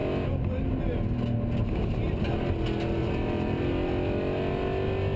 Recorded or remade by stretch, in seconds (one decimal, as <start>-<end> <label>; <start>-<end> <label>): 0.0-3.0 recorded; 3.0-3.7 remade; 3.7-5.2 recorded